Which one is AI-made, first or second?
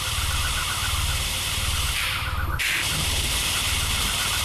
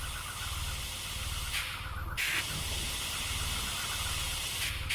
first